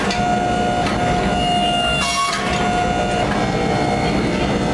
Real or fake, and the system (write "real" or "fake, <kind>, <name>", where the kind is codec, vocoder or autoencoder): real